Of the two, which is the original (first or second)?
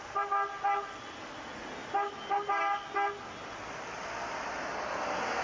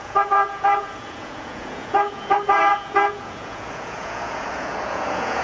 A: first